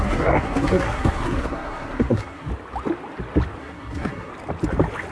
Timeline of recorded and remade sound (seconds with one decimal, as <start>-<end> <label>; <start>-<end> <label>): 0.0-2.5 remade; 2.5-3.6 recorded; 3.6-4.3 remade; 4.3-5.1 recorded